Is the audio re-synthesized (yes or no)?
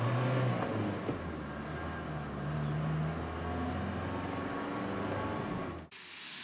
no